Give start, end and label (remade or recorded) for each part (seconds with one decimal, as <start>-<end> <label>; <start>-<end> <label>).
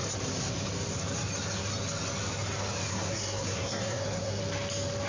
0.0-2.9 recorded; 2.9-4.4 remade; 4.4-5.1 recorded